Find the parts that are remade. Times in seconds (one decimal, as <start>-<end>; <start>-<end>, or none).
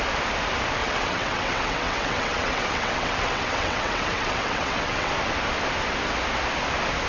0.8-5.1